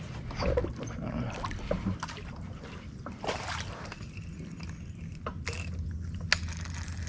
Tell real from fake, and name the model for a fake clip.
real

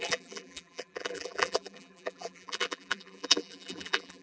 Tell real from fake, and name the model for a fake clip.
fake, vocoder, BigVGAN v2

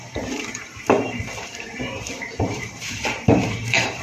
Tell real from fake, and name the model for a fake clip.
fake, vocoder, BigVGAN v2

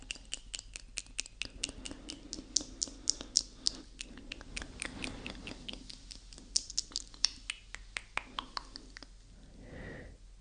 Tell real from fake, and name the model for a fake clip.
real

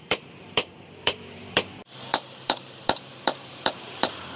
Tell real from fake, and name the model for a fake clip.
fake, vocoder, BigVGAN v2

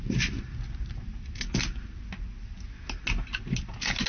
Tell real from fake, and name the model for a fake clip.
real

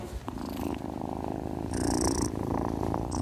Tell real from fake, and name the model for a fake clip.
fake, vocoder, BigVGAN v2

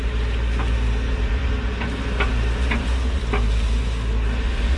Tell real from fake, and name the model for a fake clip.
real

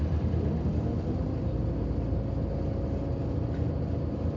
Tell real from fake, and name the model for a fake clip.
real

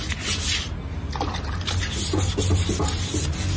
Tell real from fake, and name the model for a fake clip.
real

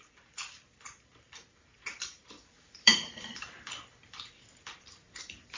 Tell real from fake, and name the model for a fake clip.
fake, vocoder, BigVGAN v2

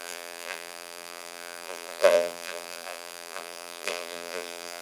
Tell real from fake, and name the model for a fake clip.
fake, vocoder, BigVGAN v2